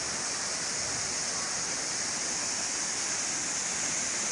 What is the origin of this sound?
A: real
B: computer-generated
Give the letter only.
A